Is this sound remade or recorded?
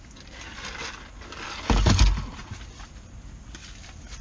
recorded